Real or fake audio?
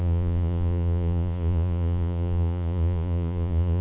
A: fake